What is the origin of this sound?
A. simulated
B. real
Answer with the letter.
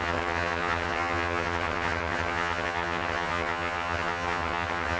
A